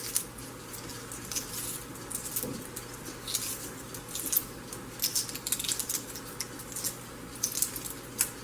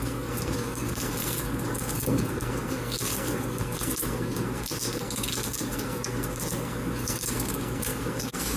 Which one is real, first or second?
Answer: first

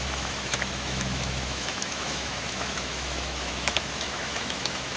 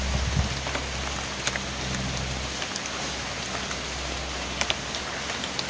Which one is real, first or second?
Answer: second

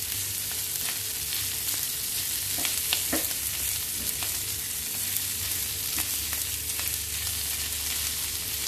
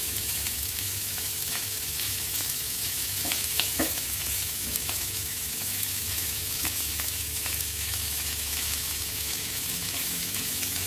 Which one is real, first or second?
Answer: first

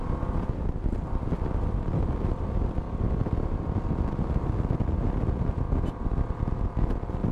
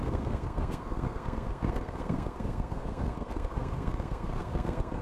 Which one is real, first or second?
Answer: first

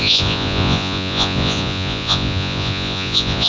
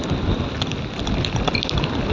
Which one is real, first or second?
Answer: second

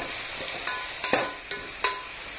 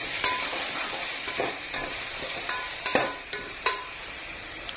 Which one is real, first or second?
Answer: first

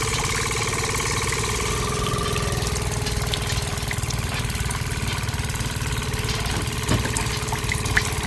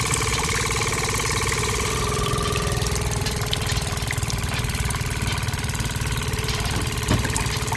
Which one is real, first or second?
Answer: first